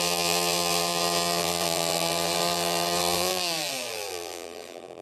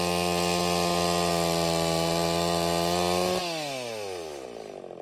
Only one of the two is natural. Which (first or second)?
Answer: second